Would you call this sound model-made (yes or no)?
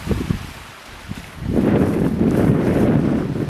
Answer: no